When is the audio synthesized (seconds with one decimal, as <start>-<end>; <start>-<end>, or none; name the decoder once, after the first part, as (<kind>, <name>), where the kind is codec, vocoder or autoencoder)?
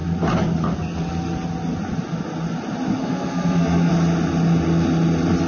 3.0-3.9 (codec, SNAC)